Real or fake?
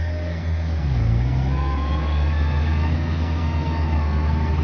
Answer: fake